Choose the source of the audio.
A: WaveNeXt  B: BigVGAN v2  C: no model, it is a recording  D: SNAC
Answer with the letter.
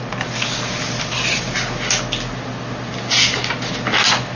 C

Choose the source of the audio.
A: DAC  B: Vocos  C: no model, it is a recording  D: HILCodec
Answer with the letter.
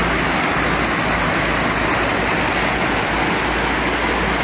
C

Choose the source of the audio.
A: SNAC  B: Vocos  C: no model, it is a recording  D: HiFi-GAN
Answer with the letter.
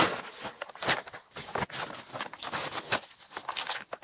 C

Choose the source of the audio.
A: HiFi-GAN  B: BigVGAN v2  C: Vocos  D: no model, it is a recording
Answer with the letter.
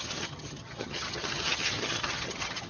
A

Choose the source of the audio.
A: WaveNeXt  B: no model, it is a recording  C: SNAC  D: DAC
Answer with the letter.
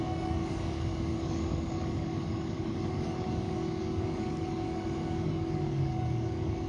D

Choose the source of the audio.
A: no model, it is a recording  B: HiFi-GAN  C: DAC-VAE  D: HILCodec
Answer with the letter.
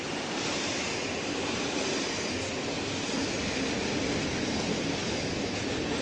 A